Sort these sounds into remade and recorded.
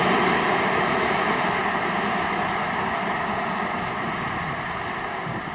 recorded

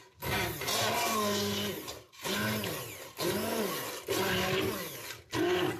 recorded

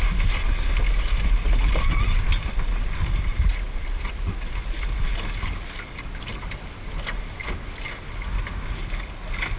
recorded